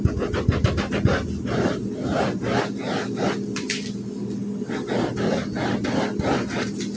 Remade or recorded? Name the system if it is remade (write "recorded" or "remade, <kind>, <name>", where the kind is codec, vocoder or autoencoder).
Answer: recorded